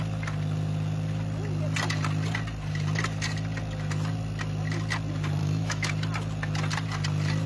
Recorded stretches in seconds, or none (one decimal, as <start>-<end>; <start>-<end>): 0.0-5.4; 5.9-7.5